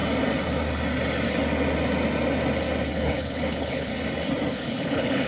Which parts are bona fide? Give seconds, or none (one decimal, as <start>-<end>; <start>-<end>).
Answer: 0.0-2.9; 3.9-4.5